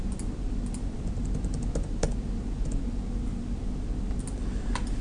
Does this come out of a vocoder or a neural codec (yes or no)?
no